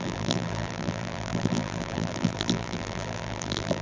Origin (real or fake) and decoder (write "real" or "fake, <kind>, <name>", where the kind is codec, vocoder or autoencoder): fake, vocoder, BigVGAN v2